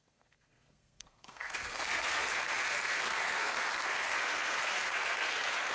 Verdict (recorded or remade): remade